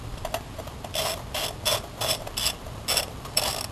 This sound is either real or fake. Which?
real